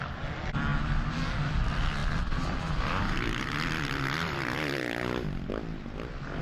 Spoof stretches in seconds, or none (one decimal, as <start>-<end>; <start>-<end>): 0.7-1.4; 2.0-5.5